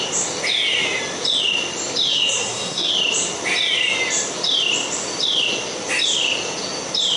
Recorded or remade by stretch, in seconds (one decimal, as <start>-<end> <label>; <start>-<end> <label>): 0.0-2.1 recorded; 2.1-2.9 remade; 2.9-7.2 recorded